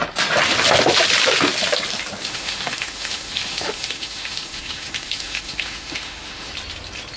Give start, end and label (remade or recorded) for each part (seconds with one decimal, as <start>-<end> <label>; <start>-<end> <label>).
0.0-2.2 recorded; 2.2-6.5 remade; 6.5-7.2 recorded